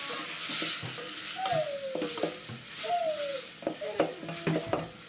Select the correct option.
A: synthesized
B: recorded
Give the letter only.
B